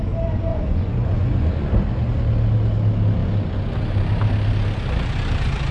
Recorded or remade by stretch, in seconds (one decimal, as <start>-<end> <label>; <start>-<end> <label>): 0.0-0.5 recorded; 0.5-1.7 remade; 1.7-5.7 recorded